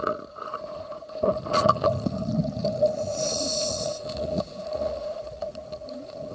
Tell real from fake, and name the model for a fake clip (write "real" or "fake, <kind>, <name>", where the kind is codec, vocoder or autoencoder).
fake, vocoder, Vocos